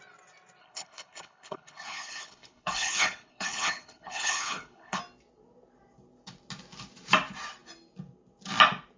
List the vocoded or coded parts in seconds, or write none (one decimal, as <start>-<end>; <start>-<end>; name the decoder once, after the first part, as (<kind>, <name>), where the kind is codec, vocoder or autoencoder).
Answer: 0.6-5.0 (codec, HILCodec)